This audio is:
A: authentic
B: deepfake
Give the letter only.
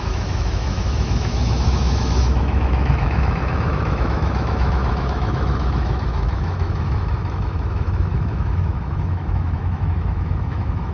B